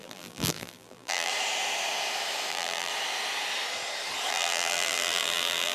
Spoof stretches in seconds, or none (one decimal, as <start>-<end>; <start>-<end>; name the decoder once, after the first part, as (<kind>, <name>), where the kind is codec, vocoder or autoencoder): 0.0-1.3 (vocoder, BigVGAN v2); 2.5-2.9; 4.3-5.7